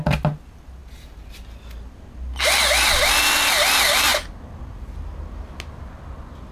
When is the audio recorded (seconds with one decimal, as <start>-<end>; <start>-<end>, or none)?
0.0-6.5